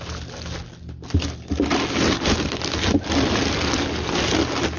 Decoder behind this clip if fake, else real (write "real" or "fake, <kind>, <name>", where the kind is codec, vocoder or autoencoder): real